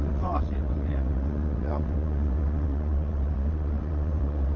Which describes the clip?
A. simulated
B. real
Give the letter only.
A